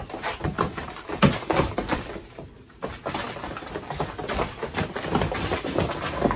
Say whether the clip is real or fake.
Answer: real